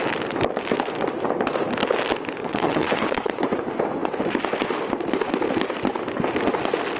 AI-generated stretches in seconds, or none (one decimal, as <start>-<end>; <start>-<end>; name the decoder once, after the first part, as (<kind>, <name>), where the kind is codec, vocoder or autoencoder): 2.4-3.6 (vocoder, WaveNeXt)